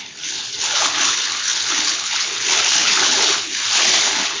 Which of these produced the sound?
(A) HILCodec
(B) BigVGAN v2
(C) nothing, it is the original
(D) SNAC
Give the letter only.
A